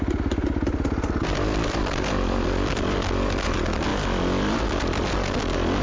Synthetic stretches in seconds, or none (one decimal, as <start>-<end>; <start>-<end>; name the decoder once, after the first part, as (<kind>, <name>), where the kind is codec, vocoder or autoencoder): none